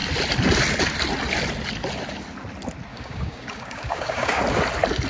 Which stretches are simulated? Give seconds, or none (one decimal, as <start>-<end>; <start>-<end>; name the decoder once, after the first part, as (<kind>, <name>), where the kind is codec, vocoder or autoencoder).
2.9-4.4 (codec, DAC)

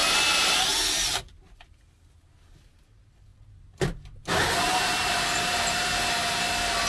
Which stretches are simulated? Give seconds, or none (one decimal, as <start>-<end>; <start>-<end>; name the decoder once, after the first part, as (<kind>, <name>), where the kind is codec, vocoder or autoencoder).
none

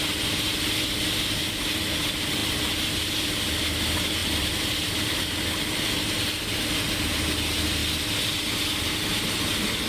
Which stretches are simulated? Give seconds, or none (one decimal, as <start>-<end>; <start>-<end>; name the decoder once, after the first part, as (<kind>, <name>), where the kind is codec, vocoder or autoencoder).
4.2-5.2 (vocoder, BigVGAN v2)